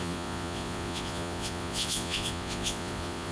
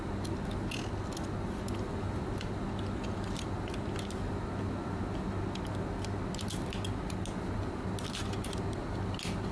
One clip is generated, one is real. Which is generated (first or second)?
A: first